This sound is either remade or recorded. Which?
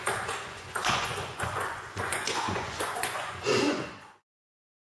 remade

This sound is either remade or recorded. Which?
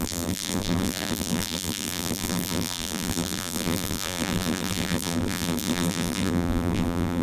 remade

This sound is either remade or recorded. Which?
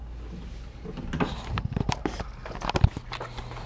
recorded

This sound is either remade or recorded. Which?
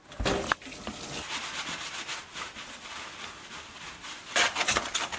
recorded